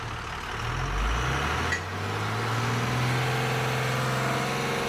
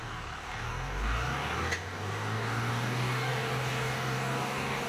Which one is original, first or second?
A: first